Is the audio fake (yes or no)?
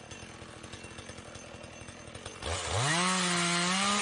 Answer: no